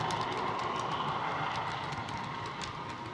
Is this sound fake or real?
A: real